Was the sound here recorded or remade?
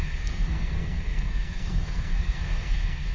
remade